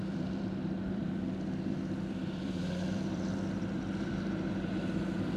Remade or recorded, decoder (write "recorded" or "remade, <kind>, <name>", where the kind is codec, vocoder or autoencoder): remade, vocoder, BigVGAN v2